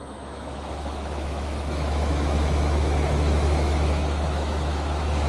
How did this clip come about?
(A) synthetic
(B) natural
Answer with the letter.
A